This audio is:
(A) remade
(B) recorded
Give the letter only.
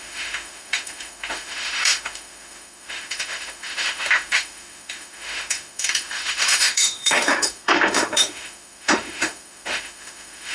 A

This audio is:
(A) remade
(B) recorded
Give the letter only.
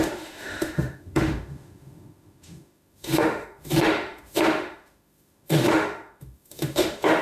A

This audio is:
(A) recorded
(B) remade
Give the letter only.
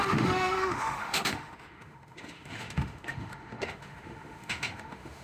B